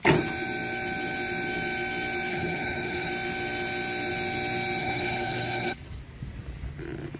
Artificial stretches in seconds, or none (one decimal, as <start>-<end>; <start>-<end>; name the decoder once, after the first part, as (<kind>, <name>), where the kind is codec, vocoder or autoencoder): 2.3-3.1 (codec, HILCodec); 4.8-6.0